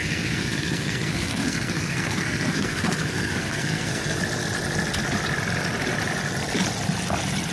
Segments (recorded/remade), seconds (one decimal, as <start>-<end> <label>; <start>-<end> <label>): 0.0-4.2 remade; 4.2-7.5 recorded